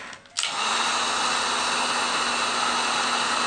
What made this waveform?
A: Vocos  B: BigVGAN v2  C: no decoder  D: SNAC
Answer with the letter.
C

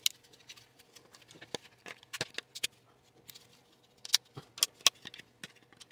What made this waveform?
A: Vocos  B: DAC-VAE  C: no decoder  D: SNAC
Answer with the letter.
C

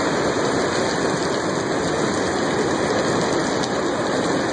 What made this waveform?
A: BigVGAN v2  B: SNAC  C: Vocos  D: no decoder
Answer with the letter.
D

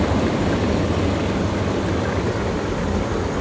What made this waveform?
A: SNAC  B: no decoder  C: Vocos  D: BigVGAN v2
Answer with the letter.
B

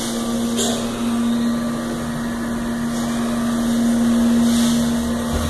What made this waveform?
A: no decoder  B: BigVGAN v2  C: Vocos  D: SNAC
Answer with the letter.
A